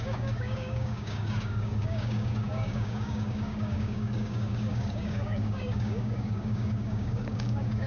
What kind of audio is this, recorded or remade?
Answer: remade